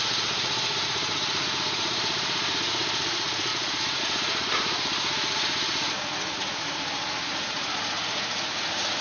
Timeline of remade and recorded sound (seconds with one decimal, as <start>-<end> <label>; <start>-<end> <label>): 0.0-9.0 remade